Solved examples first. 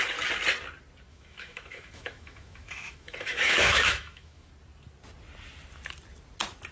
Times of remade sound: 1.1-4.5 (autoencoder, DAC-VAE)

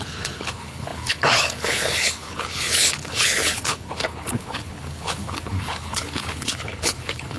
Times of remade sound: 0.0-7.4 (codec, HILCodec)

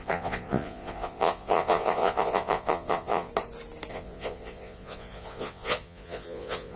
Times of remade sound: 0.0-3.3 (vocoder, Vocos); 3.9-6.8